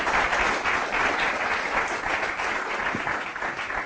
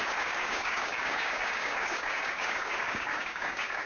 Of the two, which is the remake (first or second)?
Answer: second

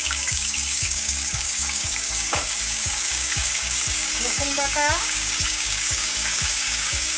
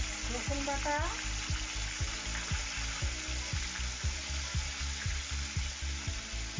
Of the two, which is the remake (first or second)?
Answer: first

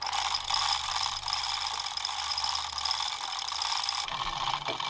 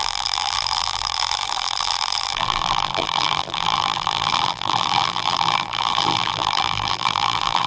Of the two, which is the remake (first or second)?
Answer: second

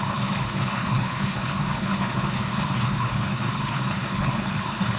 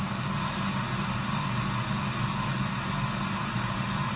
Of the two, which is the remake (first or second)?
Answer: first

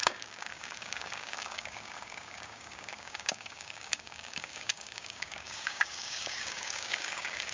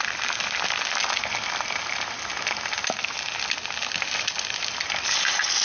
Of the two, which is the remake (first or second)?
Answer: first